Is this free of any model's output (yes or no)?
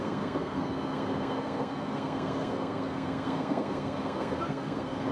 no